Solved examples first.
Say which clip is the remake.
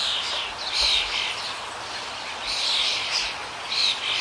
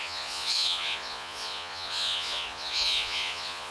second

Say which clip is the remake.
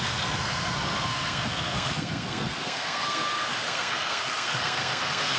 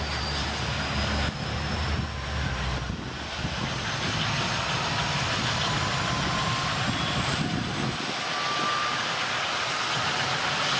first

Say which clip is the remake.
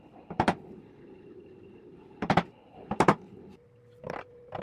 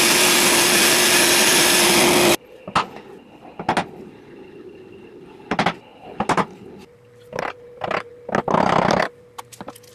first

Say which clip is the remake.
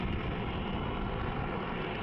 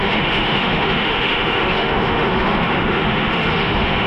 second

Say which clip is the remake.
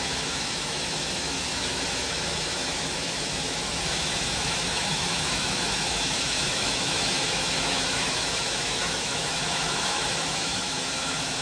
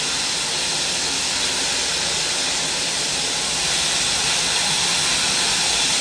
first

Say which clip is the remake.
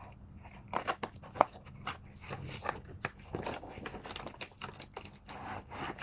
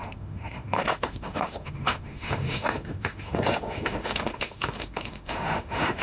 second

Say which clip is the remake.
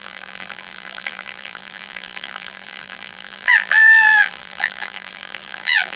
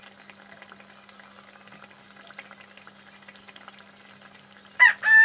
first